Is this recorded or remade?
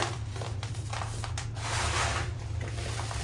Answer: remade